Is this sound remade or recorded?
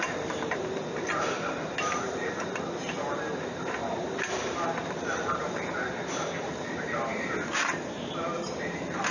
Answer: remade